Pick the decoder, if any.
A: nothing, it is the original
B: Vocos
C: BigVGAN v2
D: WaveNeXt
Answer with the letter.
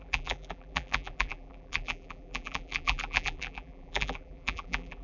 C